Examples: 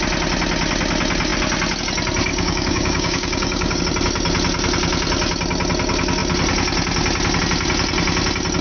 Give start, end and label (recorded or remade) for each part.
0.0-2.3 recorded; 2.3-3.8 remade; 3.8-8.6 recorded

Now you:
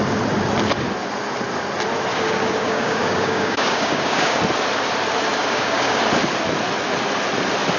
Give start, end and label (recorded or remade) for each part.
0.0-2.1 recorded; 2.1-4.4 remade; 4.4-5.4 recorded; 5.4-6.0 remade; 6.0-7.8 recorded

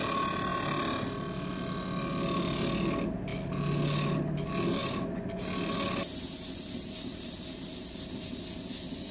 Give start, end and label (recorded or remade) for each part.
0.0-9.1 recorded

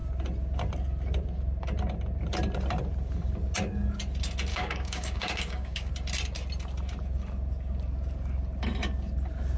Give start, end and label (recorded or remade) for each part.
0.0-4.5 recorded; 4.5-5.9 remade; 5.9-9.6 recorded

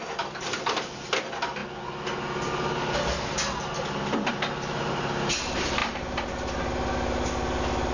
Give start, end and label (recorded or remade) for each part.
0.0-7.9 recorded